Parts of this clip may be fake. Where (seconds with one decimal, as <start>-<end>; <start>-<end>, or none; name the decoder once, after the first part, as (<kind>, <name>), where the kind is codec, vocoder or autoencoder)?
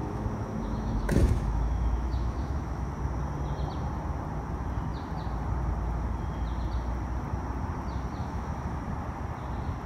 0.0-2.9 (autoencoder, DAC-VAE); 8.2-8.8